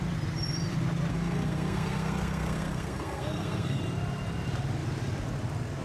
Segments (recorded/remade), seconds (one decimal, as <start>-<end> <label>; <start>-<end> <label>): 0.0-1.1 recorded; 1.1-3.8 remade; 3.8-5.8 recorded